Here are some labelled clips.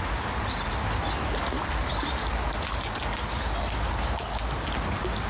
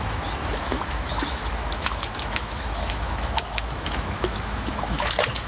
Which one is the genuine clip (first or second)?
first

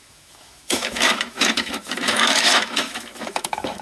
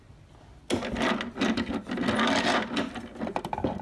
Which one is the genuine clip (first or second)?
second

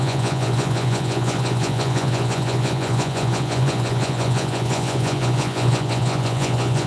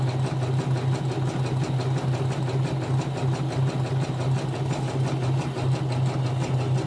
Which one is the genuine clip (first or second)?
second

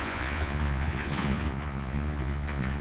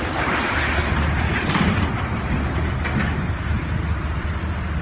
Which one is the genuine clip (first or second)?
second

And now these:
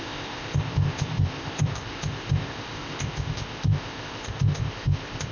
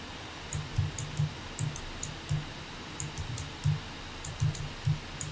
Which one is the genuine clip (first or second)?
second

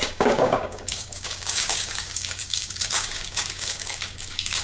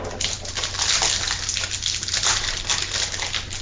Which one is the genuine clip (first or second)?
second